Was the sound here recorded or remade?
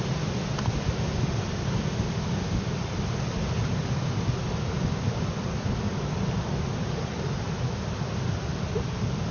recorded